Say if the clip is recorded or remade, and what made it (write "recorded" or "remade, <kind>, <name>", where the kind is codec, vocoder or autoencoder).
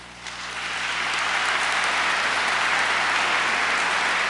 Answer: recorded